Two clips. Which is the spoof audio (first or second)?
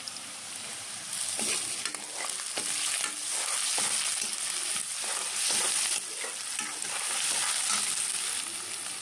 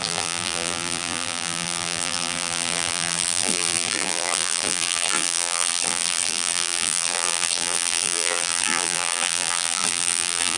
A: second